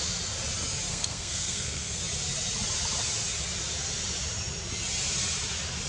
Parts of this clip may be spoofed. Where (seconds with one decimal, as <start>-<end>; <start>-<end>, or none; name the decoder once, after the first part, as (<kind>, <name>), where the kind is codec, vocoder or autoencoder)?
0.9-2.0 (codec, SNAC)